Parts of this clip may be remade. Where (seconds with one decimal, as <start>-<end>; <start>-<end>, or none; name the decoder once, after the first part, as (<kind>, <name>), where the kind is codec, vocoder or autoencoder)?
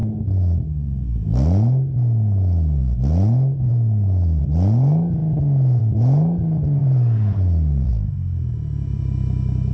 3.7-4.4 (vocoder, BigVGAN v2); 6.8-7.9